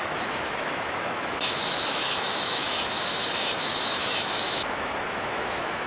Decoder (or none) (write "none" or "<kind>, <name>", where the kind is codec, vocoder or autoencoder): autoencoder, DAC-VAE